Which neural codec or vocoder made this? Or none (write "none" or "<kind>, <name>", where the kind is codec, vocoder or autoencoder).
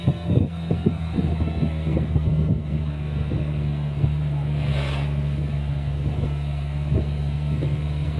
codec, SNAC